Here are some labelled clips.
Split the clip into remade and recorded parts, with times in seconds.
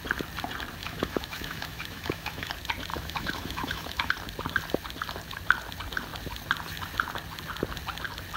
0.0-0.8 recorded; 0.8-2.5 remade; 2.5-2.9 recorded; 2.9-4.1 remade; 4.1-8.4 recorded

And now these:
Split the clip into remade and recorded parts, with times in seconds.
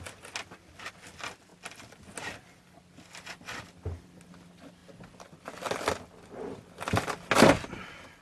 0.0-8.2 recorded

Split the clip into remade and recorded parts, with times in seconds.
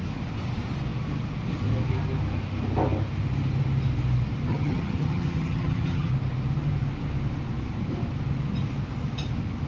0.0-4.5 recorded; 4.5-6.1 remade; 6.1-9.7 recorded